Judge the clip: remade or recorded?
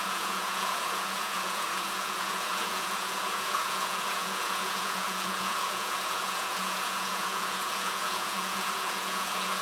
remade